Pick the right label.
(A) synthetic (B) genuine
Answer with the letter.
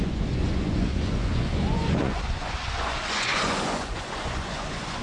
A